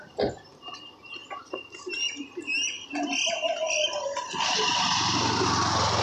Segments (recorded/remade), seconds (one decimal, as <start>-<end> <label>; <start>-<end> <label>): 0.0-6.0 recorded